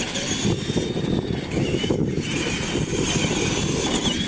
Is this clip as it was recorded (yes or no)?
yes